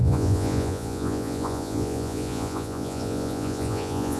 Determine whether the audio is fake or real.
fake